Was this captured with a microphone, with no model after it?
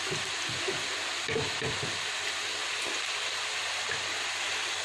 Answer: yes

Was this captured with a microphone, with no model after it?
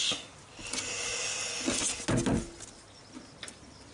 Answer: yes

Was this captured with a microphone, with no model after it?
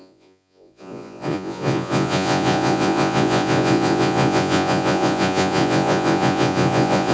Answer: no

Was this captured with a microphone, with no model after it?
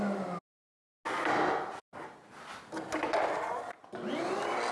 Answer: yes